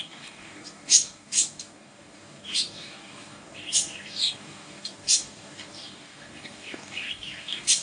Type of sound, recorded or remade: remade